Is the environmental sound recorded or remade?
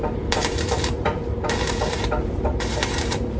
remade